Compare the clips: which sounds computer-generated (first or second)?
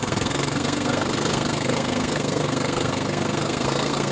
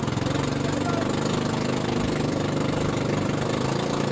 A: first